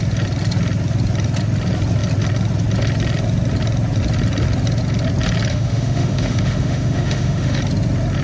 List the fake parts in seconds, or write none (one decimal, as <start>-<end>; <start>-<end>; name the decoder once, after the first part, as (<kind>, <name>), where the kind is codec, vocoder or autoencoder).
5.5-7.6 (autoencoder, DAC-VAE)